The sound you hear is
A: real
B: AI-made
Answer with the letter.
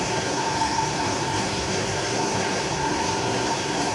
B